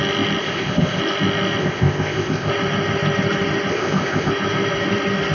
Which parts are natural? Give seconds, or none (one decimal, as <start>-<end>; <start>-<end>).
0.0-0.4; 1.0-1.6; 2.5-3.7; 4.3-5.3